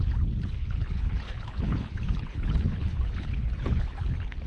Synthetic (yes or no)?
yes